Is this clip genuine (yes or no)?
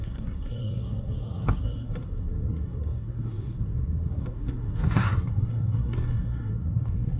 no